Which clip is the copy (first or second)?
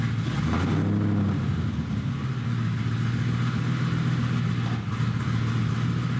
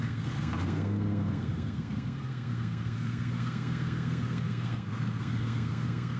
second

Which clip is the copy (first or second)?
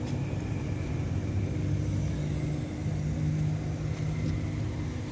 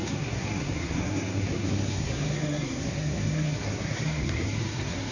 second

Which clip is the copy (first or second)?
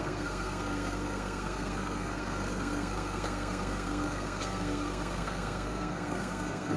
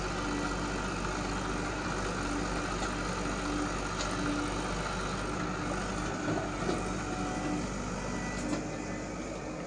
first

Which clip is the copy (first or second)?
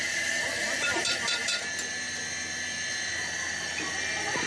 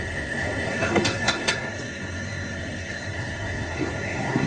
second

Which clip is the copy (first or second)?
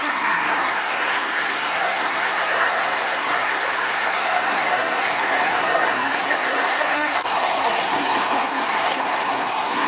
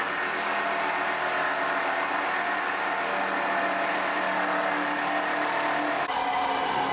first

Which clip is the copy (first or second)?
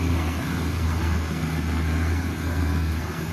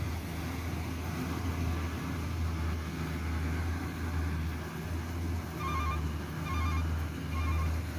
first